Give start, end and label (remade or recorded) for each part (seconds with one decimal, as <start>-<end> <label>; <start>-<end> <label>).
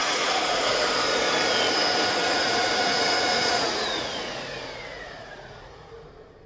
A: 0.0-0.7 remade; 0.7-2.2 recorded; 2.2-6.1 remade; 6.1-6.5 recorded